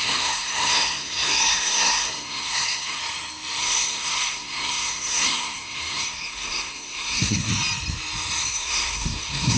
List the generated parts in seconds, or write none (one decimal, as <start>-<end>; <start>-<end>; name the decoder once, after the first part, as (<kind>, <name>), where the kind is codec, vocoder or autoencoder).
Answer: 0.0-3.0 (codec, SNAC); 3.6-7.5; 8.4-9.6